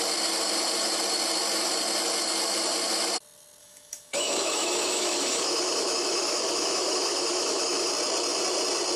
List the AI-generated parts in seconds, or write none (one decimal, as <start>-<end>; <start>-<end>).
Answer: 3.6-7.9